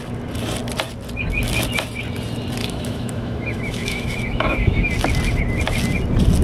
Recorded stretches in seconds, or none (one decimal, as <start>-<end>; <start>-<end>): 0.0-2.6; 4.9-6.4